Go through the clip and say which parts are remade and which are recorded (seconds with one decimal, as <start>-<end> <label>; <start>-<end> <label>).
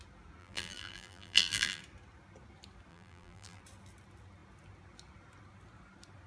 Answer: 0.0-0.4 recorded; 0.4-1.8 remade; 1.8-2.9 recorded; 2.9-3.6 remade; 3.6-6.3 recorded